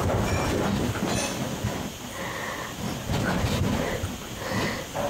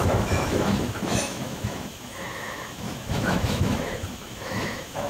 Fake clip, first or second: second